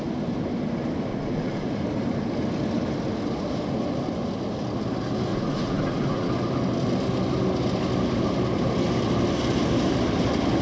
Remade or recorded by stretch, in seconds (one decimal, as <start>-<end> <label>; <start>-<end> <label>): 0.0-1.1 recorded; 1.1-1.7 remade; 1.7-5.3 recorded; 5.3-6.3 remade; 6.3-10.6 recorded